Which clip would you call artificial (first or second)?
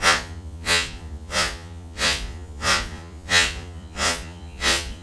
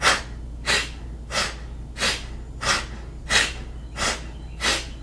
first